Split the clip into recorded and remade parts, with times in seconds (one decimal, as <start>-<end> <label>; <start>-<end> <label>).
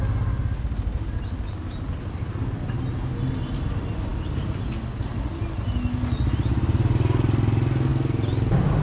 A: 0.0-8.8 recorded